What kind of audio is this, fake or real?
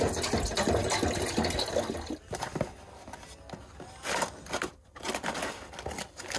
real